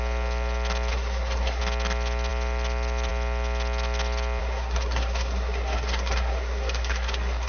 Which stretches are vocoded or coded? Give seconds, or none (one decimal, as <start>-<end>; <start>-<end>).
0.9-1.6; 4.4-7.5